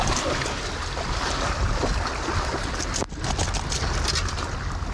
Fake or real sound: real